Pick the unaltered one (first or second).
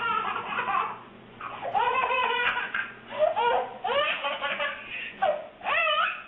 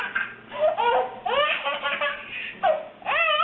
second